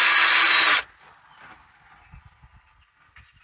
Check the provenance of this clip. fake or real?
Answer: real